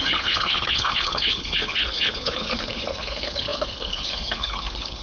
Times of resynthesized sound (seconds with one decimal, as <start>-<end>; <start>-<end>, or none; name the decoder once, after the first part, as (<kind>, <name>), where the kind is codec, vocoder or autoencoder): 0.0-5.0 (codec, HILCodec)